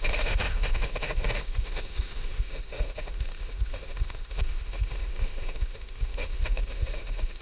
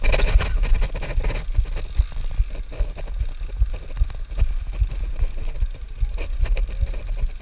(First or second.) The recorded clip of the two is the second